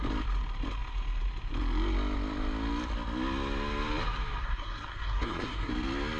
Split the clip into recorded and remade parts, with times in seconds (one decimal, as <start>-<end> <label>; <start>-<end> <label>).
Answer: 0.0-4.4 recorded; 4.4-5.7 remade; 5.7-6.2 recorded